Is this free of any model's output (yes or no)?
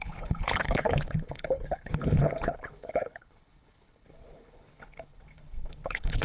no